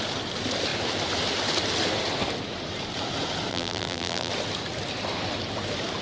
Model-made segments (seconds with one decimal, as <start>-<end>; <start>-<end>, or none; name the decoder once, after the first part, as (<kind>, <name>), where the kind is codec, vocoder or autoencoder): 3.5-4.3 (vocoder, BigVGAN v2)